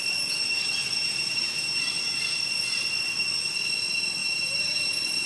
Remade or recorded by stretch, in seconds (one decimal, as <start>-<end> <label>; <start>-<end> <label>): 0.0-0.8 recorded; 0.8-2.0 remade; 2.0-4.2 recorded; 4.2-4.8 remade; 4.8-5.3 recorded